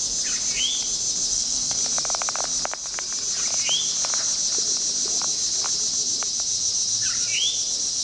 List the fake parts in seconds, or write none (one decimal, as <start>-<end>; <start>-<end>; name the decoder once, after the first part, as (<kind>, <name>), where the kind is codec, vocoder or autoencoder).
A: 1.3-1.8 (codec, SNAC)